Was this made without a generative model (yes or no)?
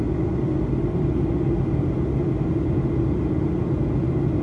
yes